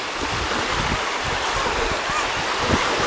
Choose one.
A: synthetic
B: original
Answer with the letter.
B